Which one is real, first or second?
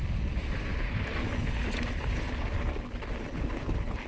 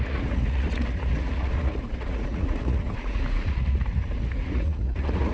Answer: first